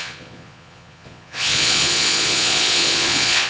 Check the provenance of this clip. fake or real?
fake